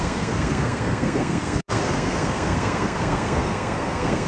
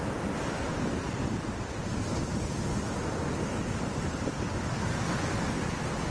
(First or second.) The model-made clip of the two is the first